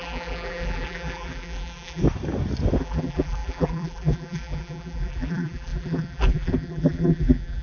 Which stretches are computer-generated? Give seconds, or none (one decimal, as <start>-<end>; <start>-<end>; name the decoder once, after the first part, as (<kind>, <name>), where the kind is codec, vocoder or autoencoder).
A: 0.0-2.0 (vocoder, BigVGAN v2); 2.8-7.6